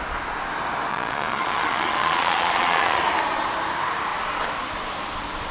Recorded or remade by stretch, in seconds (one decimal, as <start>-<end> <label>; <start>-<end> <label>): 0.0-0.9 recorded; 0.9-3.0 remade; 3.0-5.5 recorded